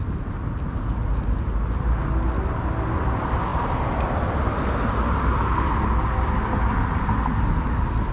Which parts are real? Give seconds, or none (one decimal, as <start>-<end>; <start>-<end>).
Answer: 0.0-8.1